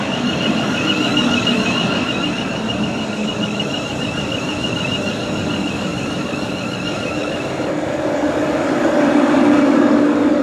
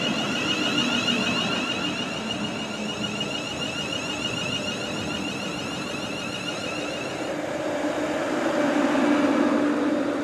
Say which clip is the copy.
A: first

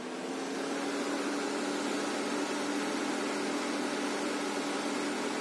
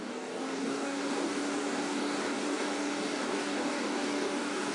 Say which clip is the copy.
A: second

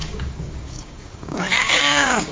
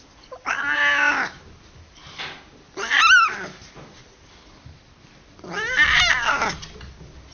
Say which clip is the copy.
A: first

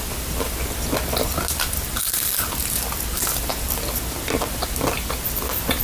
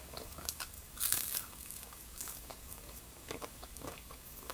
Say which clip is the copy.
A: second